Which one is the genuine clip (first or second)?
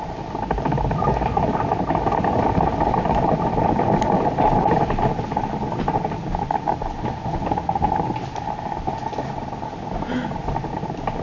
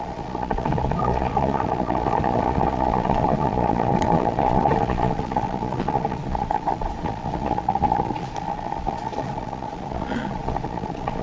first